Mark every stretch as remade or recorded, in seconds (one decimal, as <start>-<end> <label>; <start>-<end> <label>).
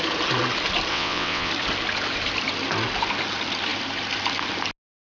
0.0-0.9 recorded; 0.9-1.5 remade; 1.5-5.2 recorded